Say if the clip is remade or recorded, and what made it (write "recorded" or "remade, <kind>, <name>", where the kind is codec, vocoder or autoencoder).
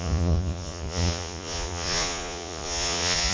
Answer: remade, vocoder, Vocos